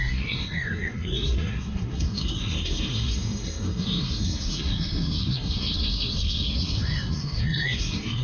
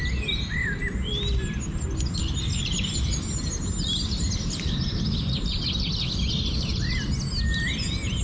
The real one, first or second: second